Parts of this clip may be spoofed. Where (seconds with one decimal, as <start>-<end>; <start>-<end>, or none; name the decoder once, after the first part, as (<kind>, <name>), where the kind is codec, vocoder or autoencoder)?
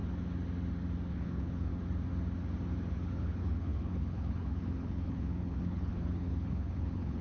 1.1-1.7 (codec, HILCodec); 2.9-7.2